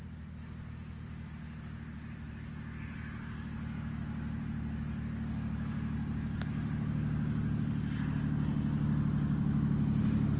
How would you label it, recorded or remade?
recorded